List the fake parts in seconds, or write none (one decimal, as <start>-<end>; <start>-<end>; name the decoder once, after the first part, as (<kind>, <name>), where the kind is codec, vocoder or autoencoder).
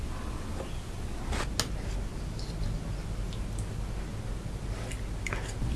none